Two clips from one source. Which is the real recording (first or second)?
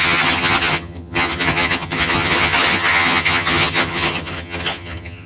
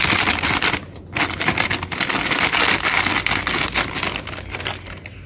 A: second